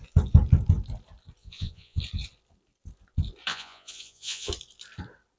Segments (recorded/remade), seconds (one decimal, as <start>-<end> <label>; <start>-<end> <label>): 0.0-1.4 recorded; 1.4-2.0 remade; 2.0-3.5 recorded; 3.5-4.5 remade; 4.5-5.4 recorded